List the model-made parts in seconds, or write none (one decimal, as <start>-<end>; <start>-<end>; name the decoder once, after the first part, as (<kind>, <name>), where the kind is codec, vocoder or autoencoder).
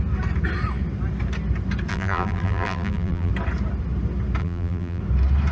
1.9-3.3 (vocoder, BigVGAN v2); 4.4-5.0